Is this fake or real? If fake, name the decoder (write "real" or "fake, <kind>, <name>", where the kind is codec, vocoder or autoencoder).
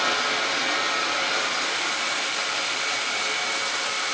fake, vocoder, BigVGAN v2